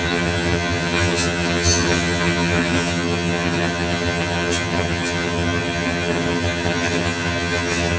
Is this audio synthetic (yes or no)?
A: yes